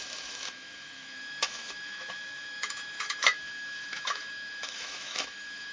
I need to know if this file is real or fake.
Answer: fake